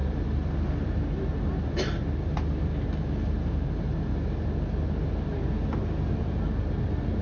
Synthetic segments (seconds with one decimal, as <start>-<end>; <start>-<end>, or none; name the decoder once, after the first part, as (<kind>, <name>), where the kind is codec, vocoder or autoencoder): none